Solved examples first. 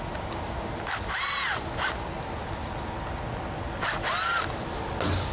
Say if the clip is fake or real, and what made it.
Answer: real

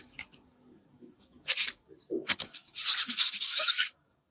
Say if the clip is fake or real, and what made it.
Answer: fake, codec, DAC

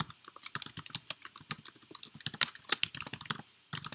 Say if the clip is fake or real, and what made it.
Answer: real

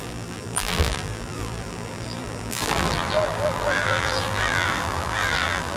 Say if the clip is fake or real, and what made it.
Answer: fake, vocoder, BigVGAN v2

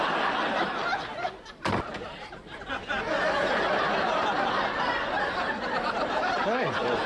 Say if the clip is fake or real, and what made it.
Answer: real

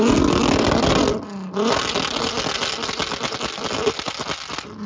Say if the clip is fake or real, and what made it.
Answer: real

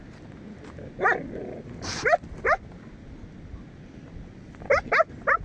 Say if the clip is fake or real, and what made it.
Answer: real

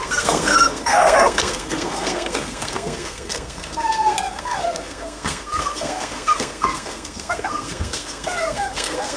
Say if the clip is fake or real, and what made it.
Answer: fake, codec, SNAC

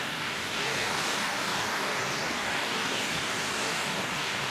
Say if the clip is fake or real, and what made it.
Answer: fake, codec, DAC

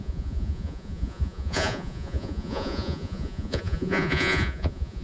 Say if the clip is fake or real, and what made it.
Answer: fake, vocoder, Vocos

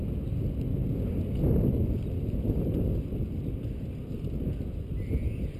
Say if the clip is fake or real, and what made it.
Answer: real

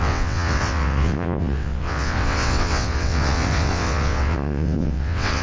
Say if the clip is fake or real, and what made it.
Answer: fake, vocoder, WaveNeXt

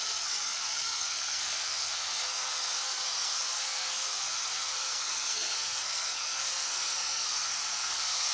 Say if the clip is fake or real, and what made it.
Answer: fake, codec, SNAC